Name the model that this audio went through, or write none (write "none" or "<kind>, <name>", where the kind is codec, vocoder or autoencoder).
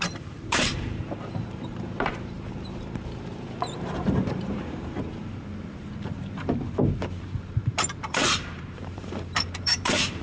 vocoder, BigVGAN v2